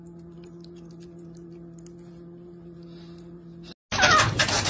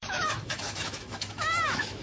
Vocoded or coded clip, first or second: second